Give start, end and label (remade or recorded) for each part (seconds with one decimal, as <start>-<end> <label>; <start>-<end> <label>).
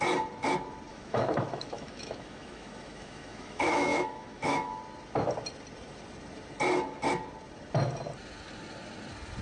0.0-0.9 recorded; 0.9-4.8 remade; 4.8-9.4 recorded